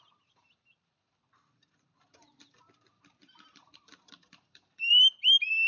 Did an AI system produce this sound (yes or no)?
yes